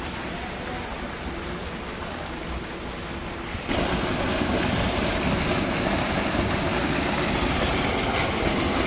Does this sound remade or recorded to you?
recorded